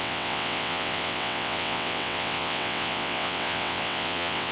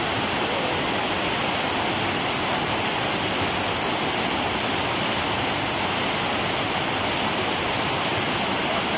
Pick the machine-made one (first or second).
first